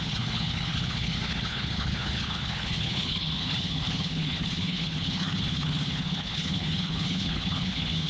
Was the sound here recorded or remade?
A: remade